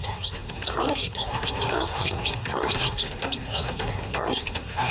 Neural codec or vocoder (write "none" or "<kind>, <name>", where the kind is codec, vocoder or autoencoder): codec, SNAC